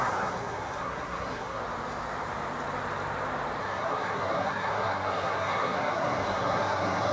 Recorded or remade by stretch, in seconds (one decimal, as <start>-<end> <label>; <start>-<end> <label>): 0.0-1.6 remade; 1.6-3.6 recorded; 3.6-7.1 remade